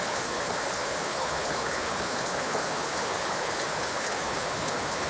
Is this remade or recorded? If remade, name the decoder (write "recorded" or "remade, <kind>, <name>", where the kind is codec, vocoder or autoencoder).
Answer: remade, codec, HILCodec